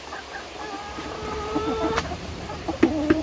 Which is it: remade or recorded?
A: remade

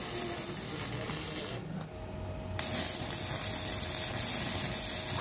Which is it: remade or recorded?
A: recorded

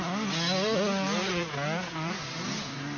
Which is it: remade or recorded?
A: recorded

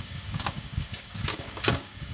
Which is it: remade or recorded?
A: remade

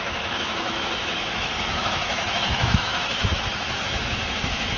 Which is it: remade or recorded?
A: remade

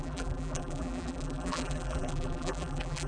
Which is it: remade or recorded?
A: remade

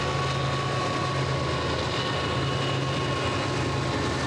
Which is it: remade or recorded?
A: recorded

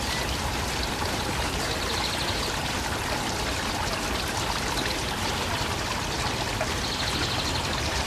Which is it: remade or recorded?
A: recorded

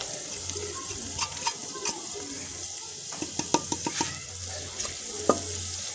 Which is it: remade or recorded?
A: recorded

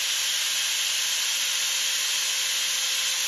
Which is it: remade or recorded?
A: recorded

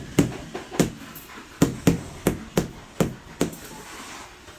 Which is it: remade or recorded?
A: recorded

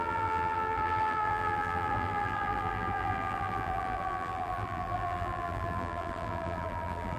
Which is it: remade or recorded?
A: remade